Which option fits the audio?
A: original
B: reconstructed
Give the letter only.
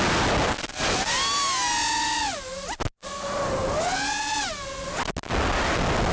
A